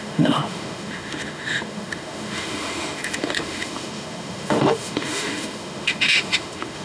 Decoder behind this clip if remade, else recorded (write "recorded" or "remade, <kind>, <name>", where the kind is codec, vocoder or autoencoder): remade, autoencoder, DAC-VAE